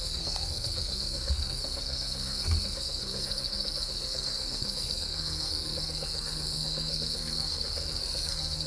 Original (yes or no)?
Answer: no